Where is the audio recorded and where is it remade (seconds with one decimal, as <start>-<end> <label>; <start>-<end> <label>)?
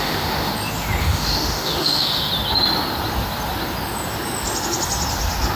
0.0-0.5 remade; 0.5-1.0 recorded; 1.0-2.3 remade; 2.3-5.6 recorded